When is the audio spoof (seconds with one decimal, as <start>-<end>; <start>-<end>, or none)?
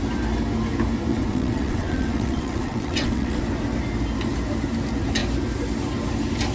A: 1.1-3.4